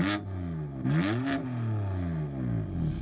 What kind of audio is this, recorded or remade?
recorded